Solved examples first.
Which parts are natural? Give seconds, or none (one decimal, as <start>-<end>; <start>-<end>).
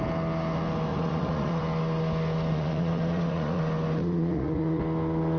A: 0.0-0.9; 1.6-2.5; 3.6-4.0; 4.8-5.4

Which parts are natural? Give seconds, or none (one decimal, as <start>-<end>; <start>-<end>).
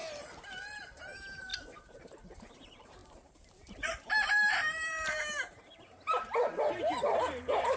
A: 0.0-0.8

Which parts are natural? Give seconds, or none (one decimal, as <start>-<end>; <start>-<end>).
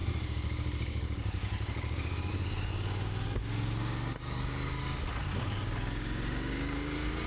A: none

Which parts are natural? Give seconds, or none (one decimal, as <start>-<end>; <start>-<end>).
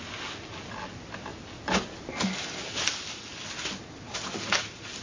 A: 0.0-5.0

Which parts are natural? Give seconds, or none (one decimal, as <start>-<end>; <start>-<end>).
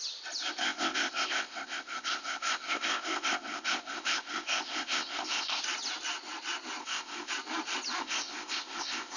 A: 0.0-0.6; 5.6-6.8; 7.3-8.0